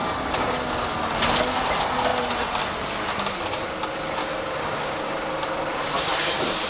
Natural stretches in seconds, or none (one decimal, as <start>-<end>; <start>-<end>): 0.0-4.2; 5.1-6.7